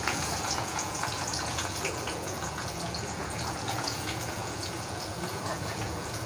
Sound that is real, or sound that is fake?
fake